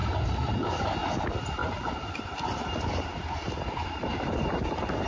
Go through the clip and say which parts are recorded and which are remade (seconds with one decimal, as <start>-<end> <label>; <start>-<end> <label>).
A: 0.0-0.5 remade; 0.5-1.6 recorded; 1.6-5.1 remade